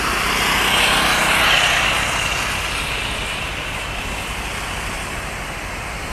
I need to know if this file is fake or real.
real